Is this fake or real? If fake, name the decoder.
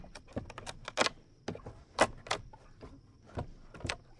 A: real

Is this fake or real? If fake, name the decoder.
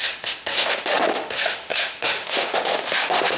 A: fake, autoencoder, DAC-VAE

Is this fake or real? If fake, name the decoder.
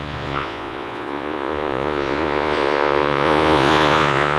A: fake, vocoder, Vocos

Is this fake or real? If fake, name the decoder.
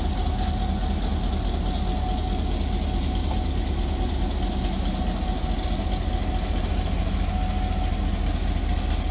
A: real